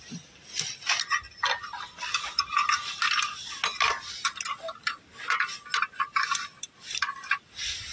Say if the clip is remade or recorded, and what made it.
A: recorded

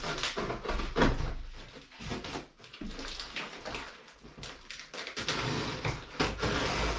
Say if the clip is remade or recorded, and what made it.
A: recorded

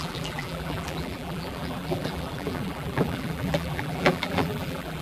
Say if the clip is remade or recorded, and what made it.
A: remade, vocoder, BigVGAN v2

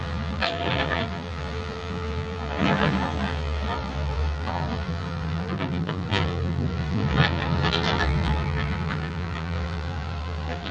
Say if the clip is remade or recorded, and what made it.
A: remade, vocoder, BigVGAN v2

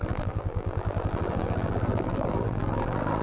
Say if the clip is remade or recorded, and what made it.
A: remade, vocoder, BigVGAN v2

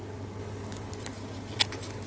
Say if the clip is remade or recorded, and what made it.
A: recorded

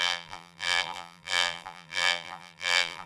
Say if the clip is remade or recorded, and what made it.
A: remade, vocoder, BigVGAN v2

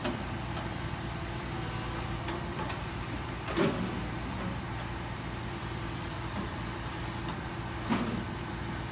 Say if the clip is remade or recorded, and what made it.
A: remade, vocoder, BigVGAN v2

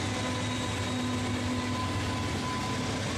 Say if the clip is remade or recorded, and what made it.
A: recorded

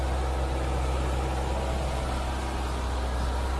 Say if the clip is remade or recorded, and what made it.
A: recorded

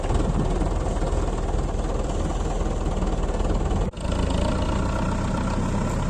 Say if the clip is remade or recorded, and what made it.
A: recorded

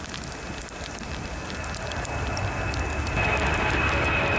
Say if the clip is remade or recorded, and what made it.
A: recorded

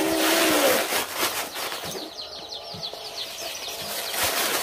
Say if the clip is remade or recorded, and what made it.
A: recorded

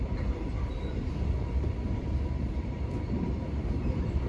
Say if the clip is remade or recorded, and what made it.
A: remade, vocoder, BigVGAN v2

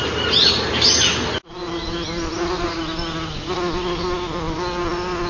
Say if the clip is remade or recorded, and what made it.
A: recorded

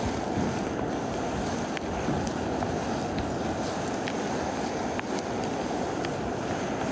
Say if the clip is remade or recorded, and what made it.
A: recorded